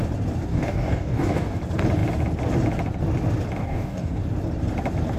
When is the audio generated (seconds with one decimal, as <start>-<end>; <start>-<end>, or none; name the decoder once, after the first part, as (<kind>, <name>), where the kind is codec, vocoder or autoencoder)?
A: 0.5-1.6 (codec, DAC); 3.6-4.2